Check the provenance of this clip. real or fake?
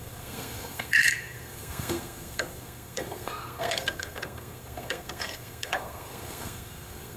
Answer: fake